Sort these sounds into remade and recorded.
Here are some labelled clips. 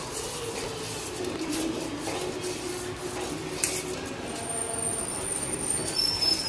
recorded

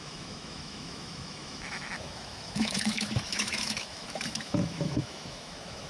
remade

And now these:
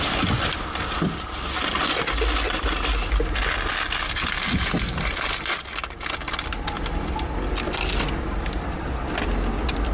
recorded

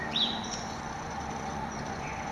remade